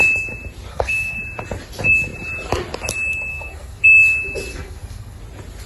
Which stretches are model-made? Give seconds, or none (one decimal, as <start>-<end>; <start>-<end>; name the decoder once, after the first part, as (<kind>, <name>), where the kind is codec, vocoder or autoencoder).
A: 0.7-1.2 (codec, SNAC); 3.3-3.8; 4.5-5.2